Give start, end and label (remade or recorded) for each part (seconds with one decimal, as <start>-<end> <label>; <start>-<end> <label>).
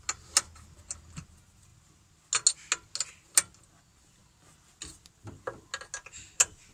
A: 0.0-6.7 recorded